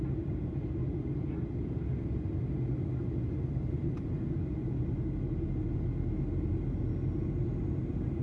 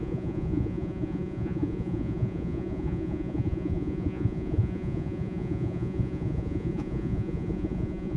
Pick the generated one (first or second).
second